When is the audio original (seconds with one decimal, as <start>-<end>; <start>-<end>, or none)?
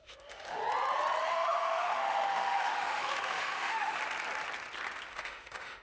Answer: 0.6-1.2; 4.0-5.1